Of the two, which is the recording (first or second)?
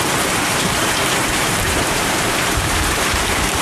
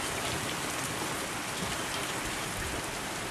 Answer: second